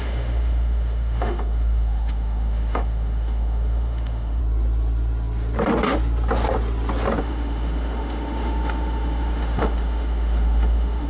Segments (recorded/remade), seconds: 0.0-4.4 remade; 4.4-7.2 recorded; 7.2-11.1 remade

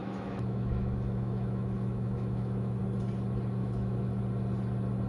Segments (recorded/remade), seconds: 0.0-2.8 remade; 2.8-3.6 recorded; 3.6-4.2 remade; 4.2-5.1 recorded

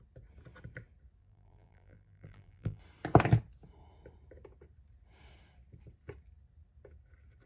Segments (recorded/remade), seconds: 0.0-1.2 recorded; 1.2-2.8 remade; 2.8-7.5 recorded

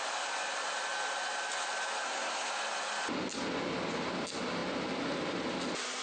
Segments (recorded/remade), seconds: 0.0-2.0 recorded; 2.0-2.5 remade; 2.5-6.0 recorded

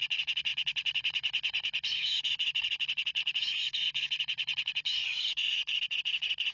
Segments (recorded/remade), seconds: 0.0-6.5 recorded

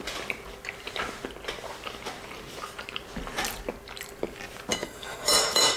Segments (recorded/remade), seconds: 0.0-4.7 recorded; 4.7-5.8 remade

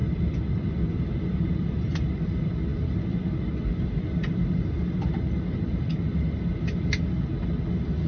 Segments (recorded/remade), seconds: 0.0-8.1 recorded

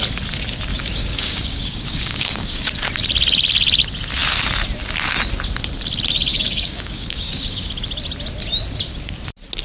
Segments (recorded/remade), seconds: 0.0-0.7 recorded; 0.7-2.7 remade; 2.7-6.3 recorded; 6.3-7.7 remade; 7.7-9.6 recorded